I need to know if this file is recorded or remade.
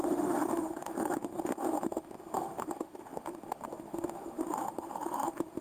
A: remade